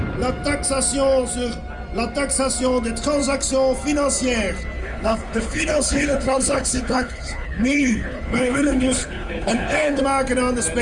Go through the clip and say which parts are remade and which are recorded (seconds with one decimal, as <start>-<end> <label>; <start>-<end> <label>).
0.0-4.8 recorded; 4.8-10.0 remade; 10.0-10.8 recorded

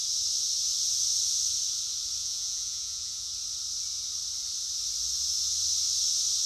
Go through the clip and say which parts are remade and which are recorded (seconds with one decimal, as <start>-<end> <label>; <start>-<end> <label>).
0.0-2.2 recorded; 2.2-3.3 remade; 3.3-6.5 recorded

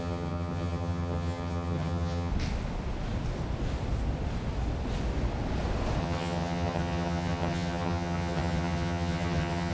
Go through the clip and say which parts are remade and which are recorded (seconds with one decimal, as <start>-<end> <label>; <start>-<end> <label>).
0.0-2.3 remade; 2.3-6.0 recorded; 6.0-9.7 remade